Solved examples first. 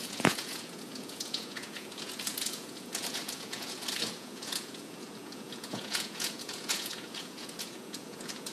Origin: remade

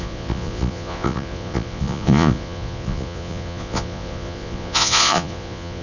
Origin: remade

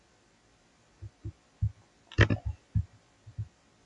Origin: recorded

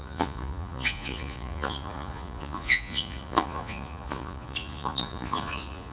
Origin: remade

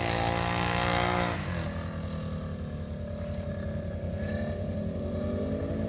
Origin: recorded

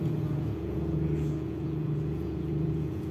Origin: remade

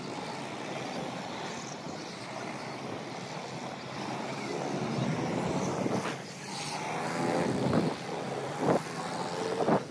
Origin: recorded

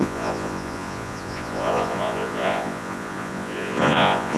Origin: remade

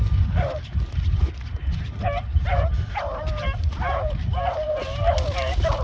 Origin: recorded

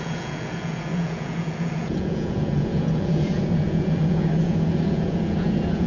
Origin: remade